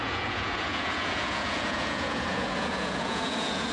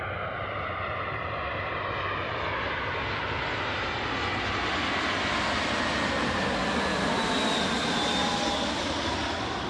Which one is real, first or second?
second